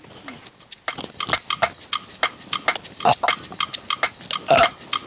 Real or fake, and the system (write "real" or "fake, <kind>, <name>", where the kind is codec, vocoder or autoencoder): real